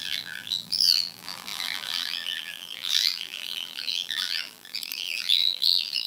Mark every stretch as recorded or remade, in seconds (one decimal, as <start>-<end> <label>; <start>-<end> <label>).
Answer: 0.0-6.1 remade